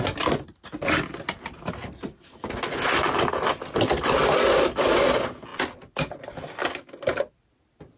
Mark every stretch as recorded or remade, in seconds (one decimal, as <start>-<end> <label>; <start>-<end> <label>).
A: 0.0-8.0 recorded